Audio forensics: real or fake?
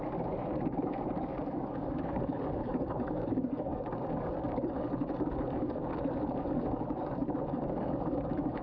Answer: fake